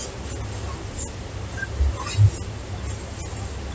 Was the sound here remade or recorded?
recorded